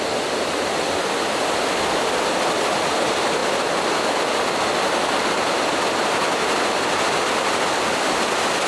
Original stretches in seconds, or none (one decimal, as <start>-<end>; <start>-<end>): 0.0-8.7